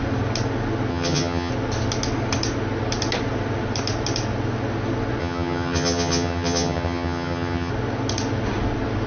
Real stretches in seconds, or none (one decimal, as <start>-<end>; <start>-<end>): 0.0-0.9; 1.5-5.2; 7.7-9.1